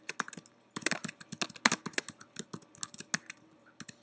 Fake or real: real